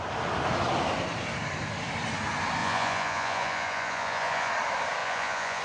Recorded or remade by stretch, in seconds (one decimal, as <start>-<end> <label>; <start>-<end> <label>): 0.0-2.6 recorded; 2.6-4.5 remade; 4.5-5.0 recorded; 5.0-5.6 remade